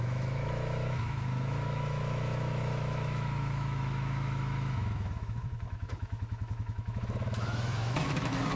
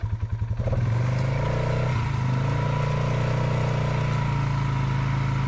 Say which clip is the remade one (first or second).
first